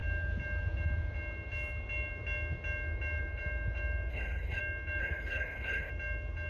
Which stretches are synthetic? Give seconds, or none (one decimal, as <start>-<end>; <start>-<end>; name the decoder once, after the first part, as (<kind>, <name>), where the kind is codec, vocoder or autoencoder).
4.1-4.6 (codec, HILCodec); 5.0-5.9